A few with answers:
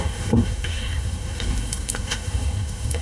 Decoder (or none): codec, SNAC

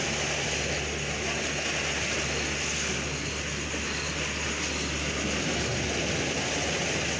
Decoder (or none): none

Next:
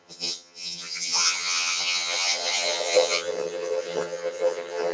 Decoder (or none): vocoder, HiFi-GAN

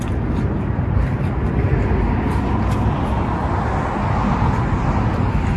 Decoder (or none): none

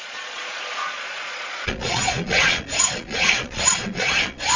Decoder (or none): vocoder, Vocos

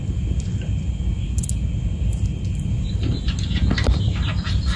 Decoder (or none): none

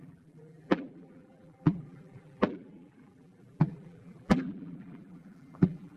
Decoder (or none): vocoder, BigVGAN v2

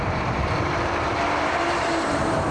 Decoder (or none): vocoder, BigVGAN v2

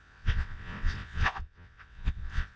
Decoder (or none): vocoder, WaveNeXt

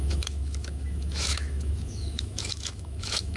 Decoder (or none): autoencoder, DAC-VAE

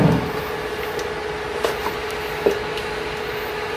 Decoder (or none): none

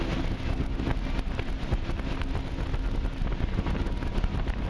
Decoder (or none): none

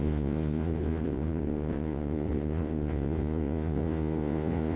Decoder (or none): vocoder, Vocos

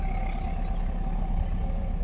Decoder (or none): none